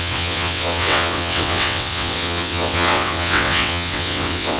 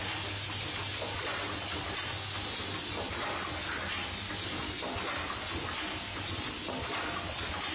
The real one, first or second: second